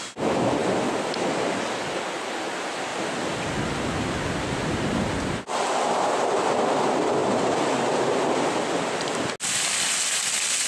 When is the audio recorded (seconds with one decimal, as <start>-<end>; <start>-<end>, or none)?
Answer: 0.0-0.6; 1.6-2.9; 3.5-7.2; 8.0-10.7